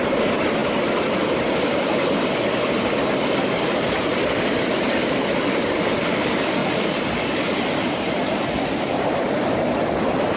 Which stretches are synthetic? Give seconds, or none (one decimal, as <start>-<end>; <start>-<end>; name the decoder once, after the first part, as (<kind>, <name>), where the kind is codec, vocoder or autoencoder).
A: 0.0-4.1 (vocoder, BigVGAN v2); 4.7-5.2; 5.9-10.4